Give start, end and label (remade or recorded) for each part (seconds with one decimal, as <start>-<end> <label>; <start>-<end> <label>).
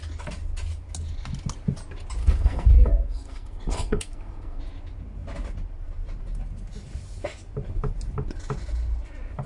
0.0-2.2 recorded; 2.2-4.6 remade; 4.6-9.5 recorded